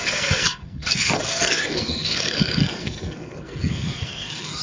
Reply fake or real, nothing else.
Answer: fake